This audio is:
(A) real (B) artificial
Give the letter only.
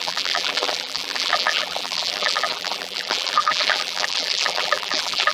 B